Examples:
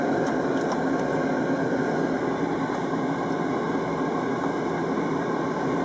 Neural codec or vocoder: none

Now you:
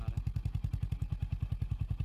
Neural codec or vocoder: none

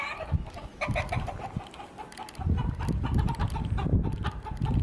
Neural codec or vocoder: none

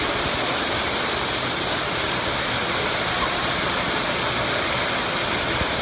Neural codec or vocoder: none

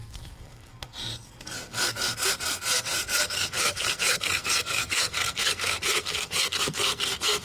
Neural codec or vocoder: codec, SNAC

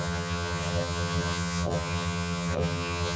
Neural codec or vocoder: vocoder, HiFi-GAN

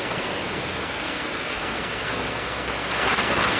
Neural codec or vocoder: codec, SNAC